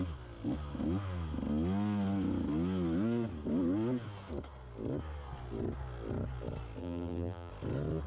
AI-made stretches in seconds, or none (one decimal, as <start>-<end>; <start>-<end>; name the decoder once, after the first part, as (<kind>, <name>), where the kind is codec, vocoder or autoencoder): 6.8-7.5 (vocoder, BigVGAN v2)